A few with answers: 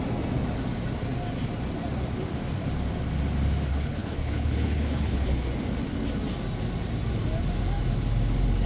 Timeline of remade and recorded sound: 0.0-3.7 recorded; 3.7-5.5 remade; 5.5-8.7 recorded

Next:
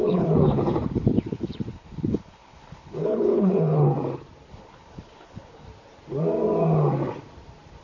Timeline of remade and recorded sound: 0.0-3.9 remade; 3.9-4.5 recorded; 4.5-5.7 remade; 5.7-7.8 recorded